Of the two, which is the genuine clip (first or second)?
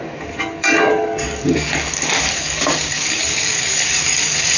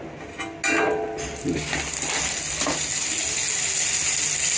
second